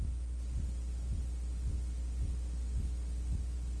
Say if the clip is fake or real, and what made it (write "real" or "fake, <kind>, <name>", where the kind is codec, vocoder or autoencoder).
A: real